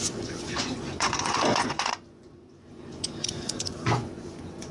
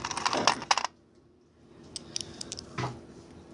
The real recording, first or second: second